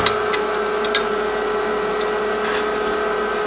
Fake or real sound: real